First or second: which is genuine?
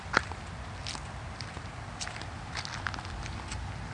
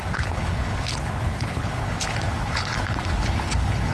first